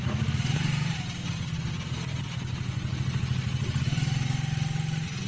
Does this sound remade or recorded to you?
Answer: recorded